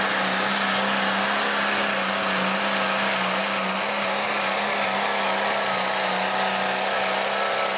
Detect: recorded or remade recorded